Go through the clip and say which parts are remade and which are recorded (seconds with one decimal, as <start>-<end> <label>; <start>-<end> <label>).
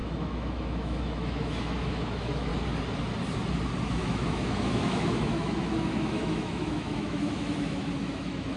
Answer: 0.0-2.5 remade; 2.5-3.9 recorded; 3.9-8.6 remade